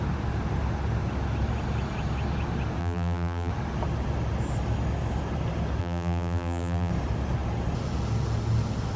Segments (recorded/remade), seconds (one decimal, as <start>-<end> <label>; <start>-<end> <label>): 0.0-2.8 recorded; 2.8-3.5 remade; 3.5-5.8 recorded; 5.8-6.9 remade; 6.9-9.0 recorded

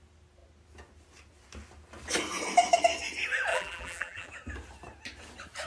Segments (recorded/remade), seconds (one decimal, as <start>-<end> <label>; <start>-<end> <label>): 0.0-3.5 recorded; 3.5-4.3 remade; 4.3-5.7 recorded